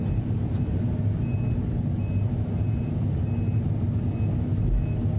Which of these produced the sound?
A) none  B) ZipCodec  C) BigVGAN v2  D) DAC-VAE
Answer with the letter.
A